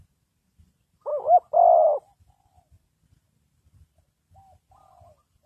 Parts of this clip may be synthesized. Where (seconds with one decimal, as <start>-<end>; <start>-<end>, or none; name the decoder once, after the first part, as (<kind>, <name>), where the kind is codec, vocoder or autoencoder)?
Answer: none

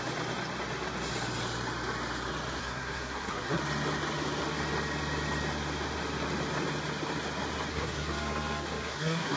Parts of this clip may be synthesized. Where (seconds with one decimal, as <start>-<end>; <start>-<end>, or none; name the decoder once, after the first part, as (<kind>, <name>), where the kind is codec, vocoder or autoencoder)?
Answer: 2.6-3.6 (codec, SNAC); 7.7-9.4

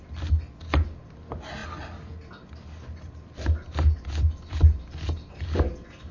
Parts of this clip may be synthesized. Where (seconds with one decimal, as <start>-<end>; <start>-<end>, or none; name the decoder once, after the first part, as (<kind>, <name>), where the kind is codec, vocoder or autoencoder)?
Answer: none

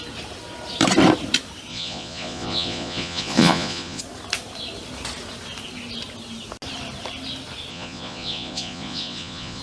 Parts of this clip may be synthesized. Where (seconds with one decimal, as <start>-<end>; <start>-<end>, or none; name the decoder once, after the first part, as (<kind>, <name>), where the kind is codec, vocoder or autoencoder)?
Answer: 1.7-4.0 (vocoder, Vocos); 7.7-9.6

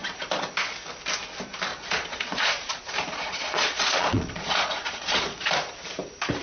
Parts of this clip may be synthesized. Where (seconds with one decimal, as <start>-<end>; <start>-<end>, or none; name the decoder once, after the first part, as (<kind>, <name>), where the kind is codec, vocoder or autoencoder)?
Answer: 1.7-5.5 (vocoder, Vocos)

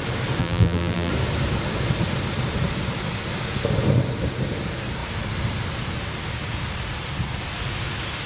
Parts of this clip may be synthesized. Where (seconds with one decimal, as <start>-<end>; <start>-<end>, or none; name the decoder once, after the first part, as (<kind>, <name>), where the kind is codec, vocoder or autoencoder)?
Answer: 0.4-1.1 (vocoder, BigVGAN v2)

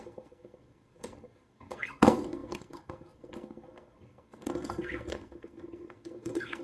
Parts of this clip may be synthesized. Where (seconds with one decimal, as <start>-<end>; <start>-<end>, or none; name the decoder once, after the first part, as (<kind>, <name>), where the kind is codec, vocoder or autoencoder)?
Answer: 0.0-6.6 (codec, SNAC)

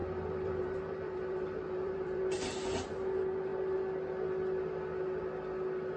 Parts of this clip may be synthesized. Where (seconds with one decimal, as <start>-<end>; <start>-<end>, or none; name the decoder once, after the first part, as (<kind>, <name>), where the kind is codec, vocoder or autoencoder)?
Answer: 0.0-2.2 (vocoder, BigVGAN v2)